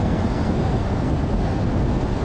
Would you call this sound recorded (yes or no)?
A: no